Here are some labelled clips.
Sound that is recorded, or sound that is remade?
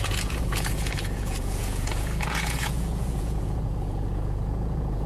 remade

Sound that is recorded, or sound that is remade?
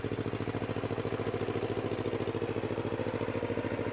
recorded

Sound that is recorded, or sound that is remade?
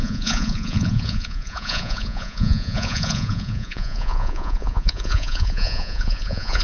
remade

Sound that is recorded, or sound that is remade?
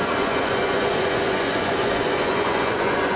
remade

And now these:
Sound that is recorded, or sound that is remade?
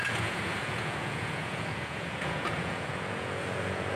remade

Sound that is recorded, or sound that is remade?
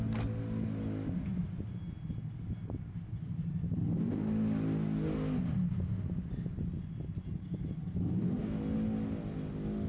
recorded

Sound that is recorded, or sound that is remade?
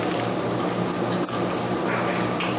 recorded